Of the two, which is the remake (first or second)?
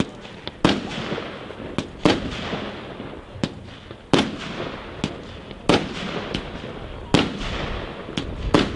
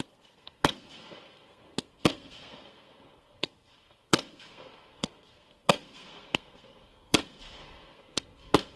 second